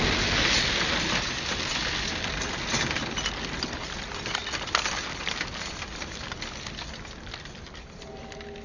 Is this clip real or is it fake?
real